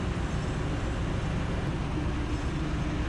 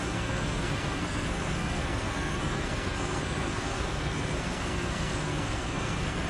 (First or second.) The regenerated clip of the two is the second